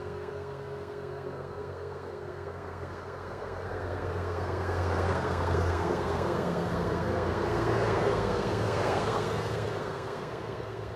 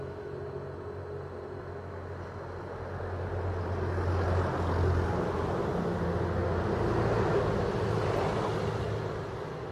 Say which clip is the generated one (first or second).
first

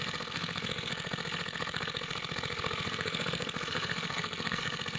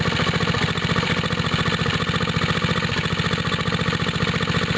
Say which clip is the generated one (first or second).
first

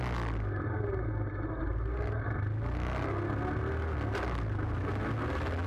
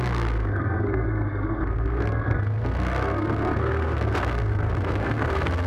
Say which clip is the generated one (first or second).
second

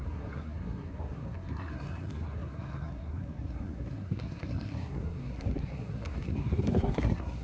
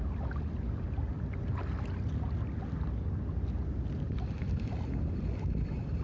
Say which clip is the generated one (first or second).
first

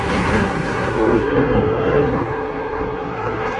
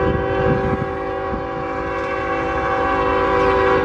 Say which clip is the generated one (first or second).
first